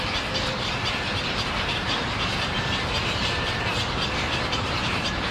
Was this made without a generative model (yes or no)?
no